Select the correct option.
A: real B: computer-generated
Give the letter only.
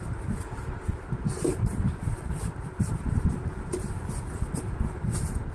A